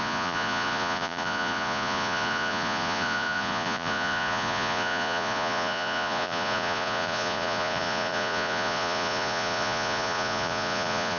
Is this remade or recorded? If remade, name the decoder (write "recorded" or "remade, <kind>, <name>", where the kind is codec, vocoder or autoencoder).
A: remade, vocoder, Vocos